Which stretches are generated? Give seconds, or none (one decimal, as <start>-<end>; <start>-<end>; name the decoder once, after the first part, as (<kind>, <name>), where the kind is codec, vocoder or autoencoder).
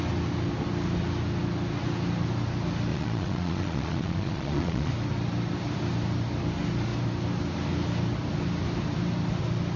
2.9-4.9 (vocoder, Vocos)